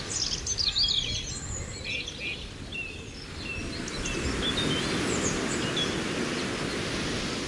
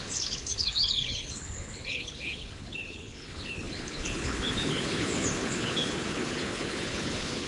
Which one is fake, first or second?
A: second